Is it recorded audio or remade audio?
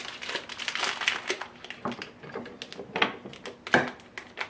recorded